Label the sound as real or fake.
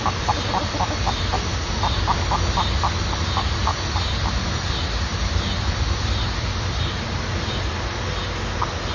real